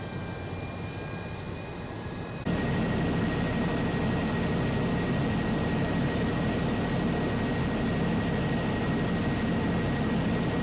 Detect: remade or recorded recorded